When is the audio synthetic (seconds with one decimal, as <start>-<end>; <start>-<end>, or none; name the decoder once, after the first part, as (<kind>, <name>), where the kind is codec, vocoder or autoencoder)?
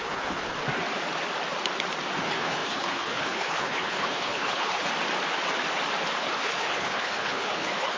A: 0.0-0.6 (codec, HILCodec); 2.2-4.9; 6.2-8.0